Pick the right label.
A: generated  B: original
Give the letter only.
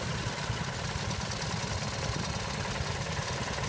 B